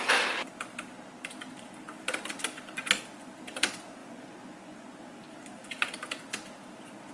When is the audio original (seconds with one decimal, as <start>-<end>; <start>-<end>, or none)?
0.0-4.0; 5.2-7.1